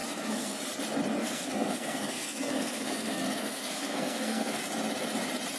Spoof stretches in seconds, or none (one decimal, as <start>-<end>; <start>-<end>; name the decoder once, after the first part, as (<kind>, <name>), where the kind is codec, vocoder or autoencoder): 0.0-0.6 (codec, SNAC); 1.2-4.6